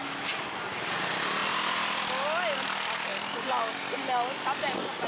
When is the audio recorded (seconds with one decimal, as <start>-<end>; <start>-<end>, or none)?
0.0-1.4; 2.0-3.1; 3.7-5.1